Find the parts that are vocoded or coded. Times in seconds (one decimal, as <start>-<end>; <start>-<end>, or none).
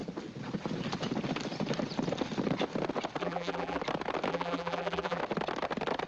3.2-3.8; 4.3-5.2